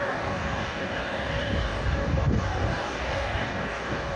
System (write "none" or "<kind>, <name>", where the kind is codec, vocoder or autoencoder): codec, DAC